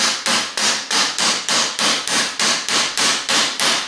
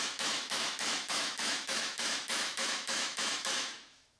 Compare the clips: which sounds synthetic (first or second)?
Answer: second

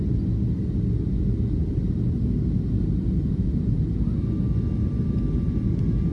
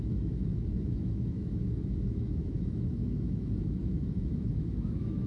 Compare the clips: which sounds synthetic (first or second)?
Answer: second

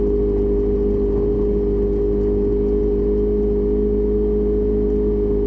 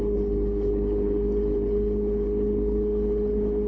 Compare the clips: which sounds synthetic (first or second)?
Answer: second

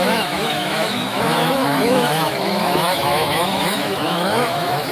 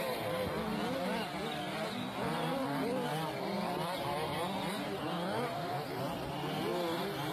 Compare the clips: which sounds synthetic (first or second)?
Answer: first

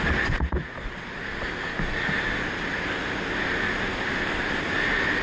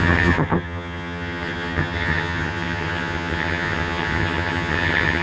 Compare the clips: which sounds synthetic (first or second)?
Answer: second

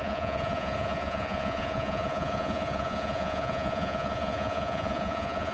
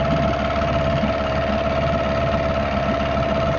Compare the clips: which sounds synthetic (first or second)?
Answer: first